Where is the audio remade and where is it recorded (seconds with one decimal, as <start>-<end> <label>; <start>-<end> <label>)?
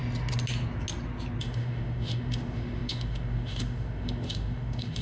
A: 0.0-1.4 recorded; 1.4-5.0 remade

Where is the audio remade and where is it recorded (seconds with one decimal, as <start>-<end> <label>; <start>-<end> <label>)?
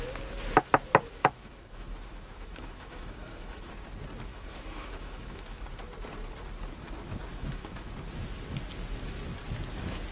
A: 0.0-1.2 recorded; 1.2-3.7 remade; 3.7-4.3 recorded; 4.3-5.6 remade; 5.6-7.3 recorded; 7.3-7.9 remade; 7.9-10.1 recorded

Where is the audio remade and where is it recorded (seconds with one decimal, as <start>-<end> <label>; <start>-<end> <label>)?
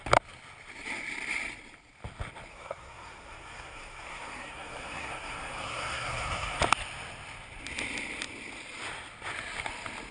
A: 0.0-2.5 recorded; 2.5-6.6 remade; 6.6-10.1 recorded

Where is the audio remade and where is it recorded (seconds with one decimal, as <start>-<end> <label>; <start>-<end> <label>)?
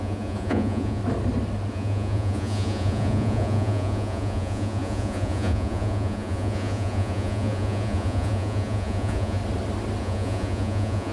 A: 0.0-1.0 remade; 1.0-1.7 recorded; 1.7-9.4 remade; 9.4-10.0 recorded; 10.0-11.1 remade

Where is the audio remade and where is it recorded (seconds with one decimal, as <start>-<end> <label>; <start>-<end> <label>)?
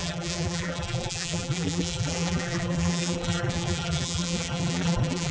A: 0.0-5.3 remade